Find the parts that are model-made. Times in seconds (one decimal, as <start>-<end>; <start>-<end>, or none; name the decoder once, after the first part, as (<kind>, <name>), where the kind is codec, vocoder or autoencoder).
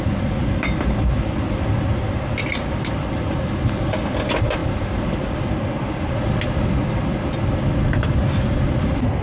4.6-5.1 (vocoder, BigVGAN v2)